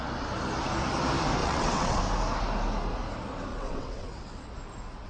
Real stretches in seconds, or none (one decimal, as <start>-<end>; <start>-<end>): 0.0-1.4; 2.0-3.5; 4.5-5.1